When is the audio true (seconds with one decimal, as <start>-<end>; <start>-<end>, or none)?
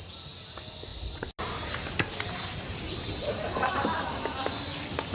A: 0.0-5.1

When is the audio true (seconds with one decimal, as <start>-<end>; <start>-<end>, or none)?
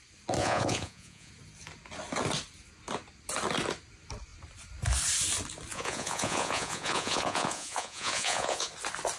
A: 0.0-0.4; 1.3-5.7; 8.7-9.2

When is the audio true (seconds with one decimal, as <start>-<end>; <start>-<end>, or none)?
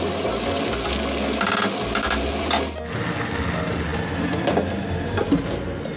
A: 0.0-6.0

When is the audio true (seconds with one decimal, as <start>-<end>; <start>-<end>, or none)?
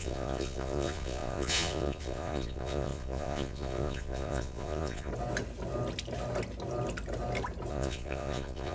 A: 5.1-7.7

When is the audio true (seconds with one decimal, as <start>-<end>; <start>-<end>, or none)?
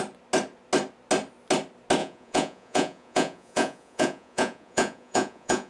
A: 0.0-2.0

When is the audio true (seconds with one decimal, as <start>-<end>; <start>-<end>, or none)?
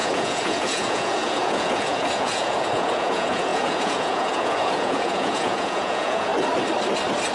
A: 6.3-7.3